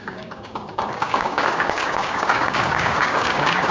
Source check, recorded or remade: remade